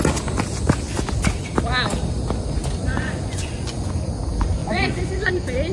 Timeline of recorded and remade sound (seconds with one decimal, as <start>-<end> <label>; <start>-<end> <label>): 0.0-2.8 recorded; 2.8-3.9 remade; 3.9-4.6 recorded; 4.6-5.3 remade; 5.3-5.7 recorded